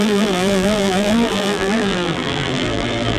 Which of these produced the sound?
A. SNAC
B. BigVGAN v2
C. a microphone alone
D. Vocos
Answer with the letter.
B